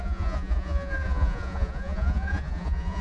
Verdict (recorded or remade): remade